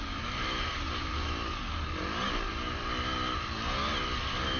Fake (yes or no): no